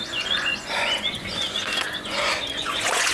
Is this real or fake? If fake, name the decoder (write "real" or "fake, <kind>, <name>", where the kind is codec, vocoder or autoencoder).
fake, vocoder, Vocos